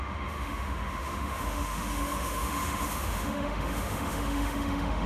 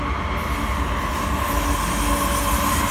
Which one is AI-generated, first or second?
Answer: first